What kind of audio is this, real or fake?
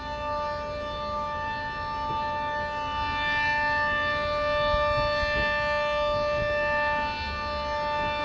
real